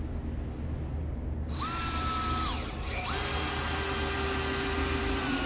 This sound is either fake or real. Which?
real